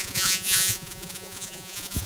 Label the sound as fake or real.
fake